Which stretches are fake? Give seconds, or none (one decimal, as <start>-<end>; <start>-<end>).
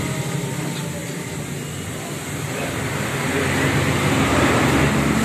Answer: none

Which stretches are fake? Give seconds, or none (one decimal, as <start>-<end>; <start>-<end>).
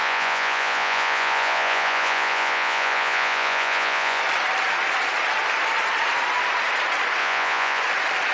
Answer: 0.0-4.2; 7.2-7.8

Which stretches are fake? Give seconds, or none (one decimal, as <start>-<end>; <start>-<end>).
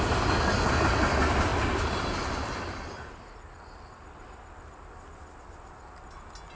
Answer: none